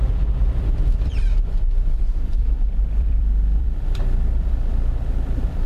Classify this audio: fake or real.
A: fake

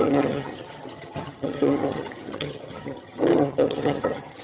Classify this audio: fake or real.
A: fake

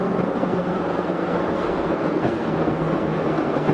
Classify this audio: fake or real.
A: fake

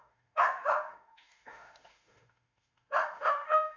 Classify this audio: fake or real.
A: fake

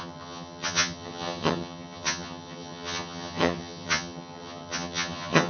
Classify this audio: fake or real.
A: fake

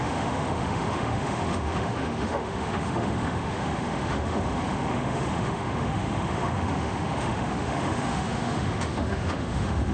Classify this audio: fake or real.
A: fake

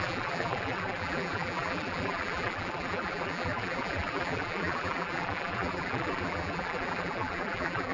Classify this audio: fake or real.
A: fake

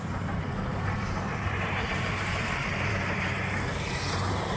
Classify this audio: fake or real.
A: fake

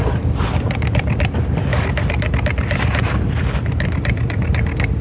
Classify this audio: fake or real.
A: fake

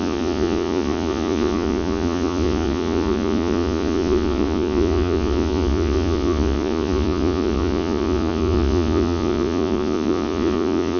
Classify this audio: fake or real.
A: fake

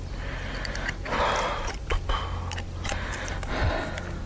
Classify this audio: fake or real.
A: real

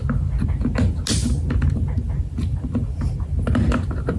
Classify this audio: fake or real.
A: real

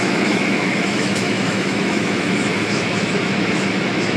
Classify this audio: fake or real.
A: fake